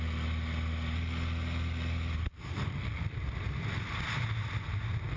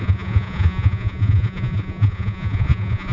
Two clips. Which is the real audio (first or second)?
first